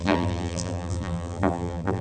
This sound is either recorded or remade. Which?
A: remade